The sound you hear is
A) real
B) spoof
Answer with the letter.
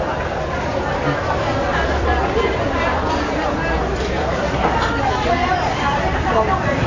B